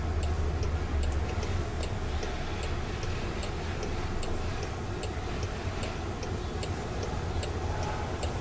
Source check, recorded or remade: recorded